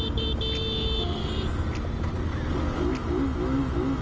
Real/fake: real